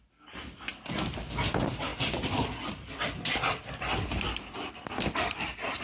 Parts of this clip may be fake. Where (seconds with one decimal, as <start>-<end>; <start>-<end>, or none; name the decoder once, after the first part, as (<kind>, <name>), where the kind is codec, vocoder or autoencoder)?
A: none